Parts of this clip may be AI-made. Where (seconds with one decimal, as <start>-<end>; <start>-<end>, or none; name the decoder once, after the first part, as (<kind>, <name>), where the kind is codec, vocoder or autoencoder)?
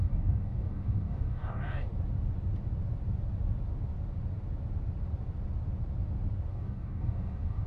0.0-1.9 (codec, DAC); 6.5-7.7